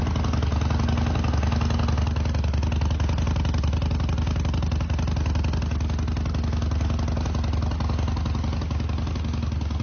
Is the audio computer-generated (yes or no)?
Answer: no